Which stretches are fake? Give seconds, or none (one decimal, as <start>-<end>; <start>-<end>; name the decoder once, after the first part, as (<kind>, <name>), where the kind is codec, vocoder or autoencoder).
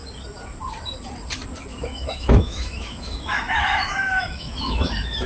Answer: 1.7-5.3 (autoencoder, DAC-VAE)